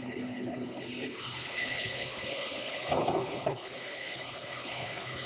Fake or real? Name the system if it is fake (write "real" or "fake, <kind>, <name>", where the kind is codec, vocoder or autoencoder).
fake, codec, HILCodec